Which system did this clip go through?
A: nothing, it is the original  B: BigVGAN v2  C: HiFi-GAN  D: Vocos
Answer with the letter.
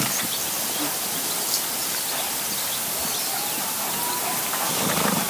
A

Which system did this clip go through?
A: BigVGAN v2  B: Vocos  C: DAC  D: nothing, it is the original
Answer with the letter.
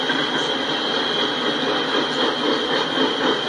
D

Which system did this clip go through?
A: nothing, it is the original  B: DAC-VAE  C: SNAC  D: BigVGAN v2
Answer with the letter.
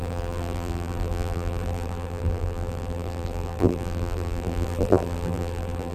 D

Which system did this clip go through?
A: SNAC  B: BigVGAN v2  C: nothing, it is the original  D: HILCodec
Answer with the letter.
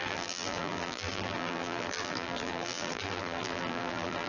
B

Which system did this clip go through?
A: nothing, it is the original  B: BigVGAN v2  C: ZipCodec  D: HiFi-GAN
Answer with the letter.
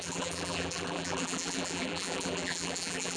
B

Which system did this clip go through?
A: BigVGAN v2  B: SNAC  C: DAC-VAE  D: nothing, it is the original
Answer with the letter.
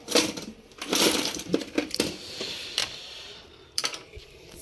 A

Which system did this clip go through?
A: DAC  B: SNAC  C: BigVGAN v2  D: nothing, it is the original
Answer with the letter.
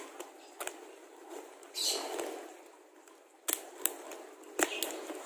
D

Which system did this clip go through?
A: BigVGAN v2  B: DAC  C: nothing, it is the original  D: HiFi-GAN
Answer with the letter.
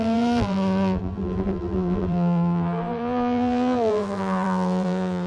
A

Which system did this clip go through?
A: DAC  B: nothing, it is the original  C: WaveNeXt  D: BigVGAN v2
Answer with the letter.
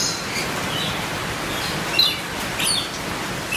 B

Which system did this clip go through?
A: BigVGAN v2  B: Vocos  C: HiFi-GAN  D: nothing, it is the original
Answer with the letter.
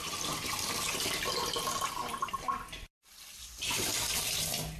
A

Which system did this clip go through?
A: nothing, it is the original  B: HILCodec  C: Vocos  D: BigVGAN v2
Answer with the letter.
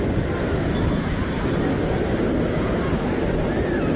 A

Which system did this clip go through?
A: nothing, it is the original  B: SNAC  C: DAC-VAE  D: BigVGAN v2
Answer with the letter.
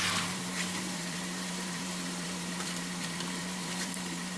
D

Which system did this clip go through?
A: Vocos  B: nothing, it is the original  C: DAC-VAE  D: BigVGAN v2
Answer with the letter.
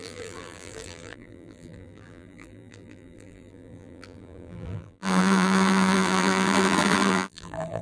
D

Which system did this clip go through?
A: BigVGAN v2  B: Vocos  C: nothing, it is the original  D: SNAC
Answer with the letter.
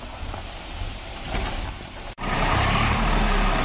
A